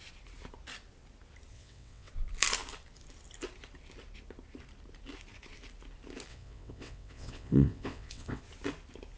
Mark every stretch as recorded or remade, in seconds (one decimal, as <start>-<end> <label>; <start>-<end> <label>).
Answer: 0.0-1.5 recorded; 1.5-2.1 remade; 2.1-6.3 recorded; 6.3-8.4 remade; 8.4-9.2 recorded